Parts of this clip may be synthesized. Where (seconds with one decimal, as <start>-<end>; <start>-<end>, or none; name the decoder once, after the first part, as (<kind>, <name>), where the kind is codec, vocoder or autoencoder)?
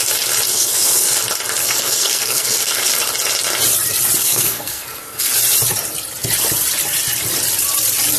0.5-1.2 (codec, SNAC); 1.6-2.9; 4.2-5.3